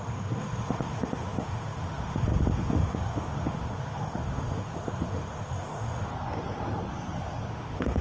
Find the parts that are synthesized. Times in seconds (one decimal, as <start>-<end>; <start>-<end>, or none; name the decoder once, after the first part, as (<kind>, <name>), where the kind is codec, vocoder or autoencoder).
0.0-6.1 (autoencoder, DAC-VAE); 7.5-8.0